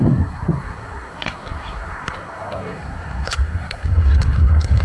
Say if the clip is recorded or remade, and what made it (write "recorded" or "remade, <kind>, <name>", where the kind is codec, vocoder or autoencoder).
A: remade, codec, SNAC